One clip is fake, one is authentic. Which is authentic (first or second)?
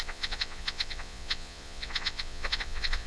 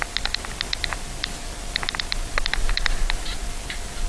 second